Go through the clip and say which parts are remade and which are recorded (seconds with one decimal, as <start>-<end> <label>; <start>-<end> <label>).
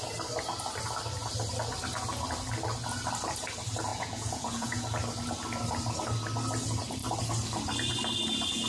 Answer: 0.0-3.9 recorded; 3.9-4.8 remade; 4.8-8.7 recorded